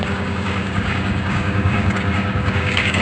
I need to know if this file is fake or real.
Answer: fake